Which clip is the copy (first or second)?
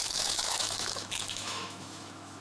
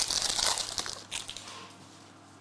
first